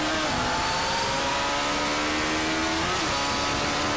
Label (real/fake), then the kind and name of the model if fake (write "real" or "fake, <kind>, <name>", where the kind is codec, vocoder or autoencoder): real